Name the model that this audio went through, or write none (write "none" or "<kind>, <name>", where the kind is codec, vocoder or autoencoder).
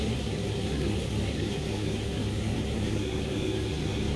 codec, SNAC